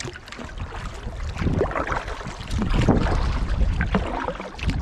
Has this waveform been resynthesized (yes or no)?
no